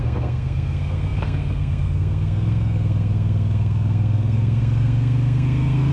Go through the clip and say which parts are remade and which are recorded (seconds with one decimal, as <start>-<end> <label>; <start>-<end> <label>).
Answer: 0.0-5.9 remade